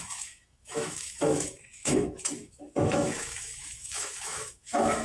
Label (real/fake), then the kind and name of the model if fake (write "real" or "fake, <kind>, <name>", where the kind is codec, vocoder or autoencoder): fake, autoencoder, DAC-VAE